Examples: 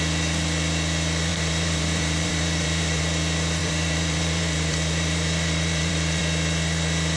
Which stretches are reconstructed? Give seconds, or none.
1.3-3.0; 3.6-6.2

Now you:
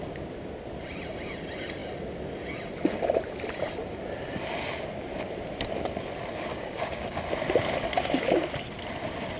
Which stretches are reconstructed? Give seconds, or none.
6.5-7.2

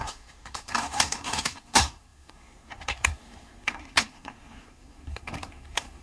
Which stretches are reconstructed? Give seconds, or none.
0.0-6.0

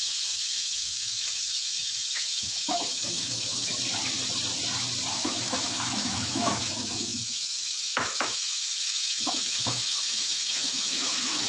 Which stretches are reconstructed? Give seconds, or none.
0.0-3.7; 5.1-11.5